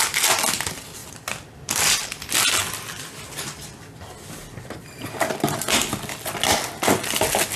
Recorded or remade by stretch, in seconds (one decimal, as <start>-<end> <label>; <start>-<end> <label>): 0.0-1.0 recorded; 1.0-5.6 remade; 5.6-7.6 recorded